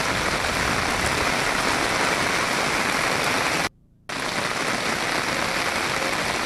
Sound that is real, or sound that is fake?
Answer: real